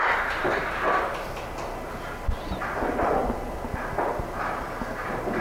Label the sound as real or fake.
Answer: real